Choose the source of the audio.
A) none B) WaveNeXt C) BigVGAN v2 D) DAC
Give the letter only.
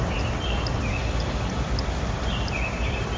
A